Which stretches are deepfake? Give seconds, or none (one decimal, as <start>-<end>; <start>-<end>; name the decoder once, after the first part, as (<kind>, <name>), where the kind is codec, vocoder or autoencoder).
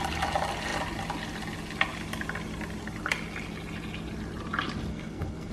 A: 4.9-5.5 (codec, SNAC)